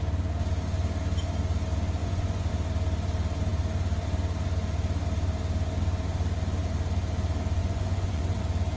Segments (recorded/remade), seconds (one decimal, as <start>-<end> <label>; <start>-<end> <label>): 0.0-2.0 recorded; 2.0-2.5 remade; 2.5-7.6 recorded; 7.6-8.4 remade; 8.4-8.8 recorded